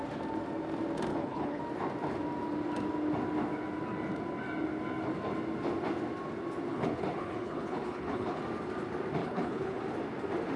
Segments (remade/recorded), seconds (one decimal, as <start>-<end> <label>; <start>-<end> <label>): 0.0-1.1 recorded; 1.1-1.6 remade; 1.6-6.7 recorded; 6.7-8.4 remade; 8.4-9.2 recorded; 9.2-9.8 remade; 9.8-10.6 recorded